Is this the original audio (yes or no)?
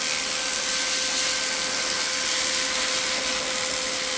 yes